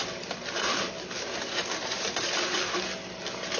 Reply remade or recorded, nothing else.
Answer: recorded